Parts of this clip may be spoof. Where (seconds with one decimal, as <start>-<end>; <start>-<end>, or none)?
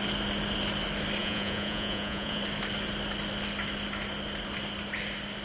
1.2-2.4